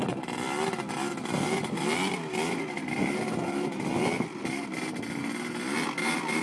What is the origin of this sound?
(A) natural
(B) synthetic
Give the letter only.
A